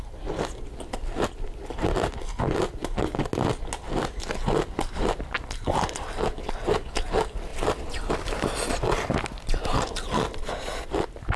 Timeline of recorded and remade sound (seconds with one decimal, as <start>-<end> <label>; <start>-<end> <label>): 0.0-11.4 recorded